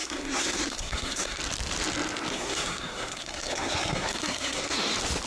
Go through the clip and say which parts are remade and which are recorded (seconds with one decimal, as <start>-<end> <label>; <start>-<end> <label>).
0.0-1.4 remade; 1.4-2.3 recorded; 2.3-4.8 remade; 4.8-5.3 recorded